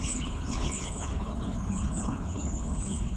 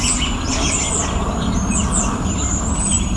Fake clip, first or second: first